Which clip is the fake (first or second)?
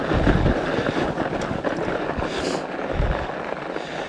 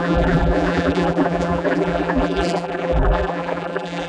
second